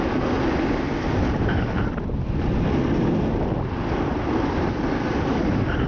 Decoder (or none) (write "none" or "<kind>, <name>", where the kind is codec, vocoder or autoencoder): none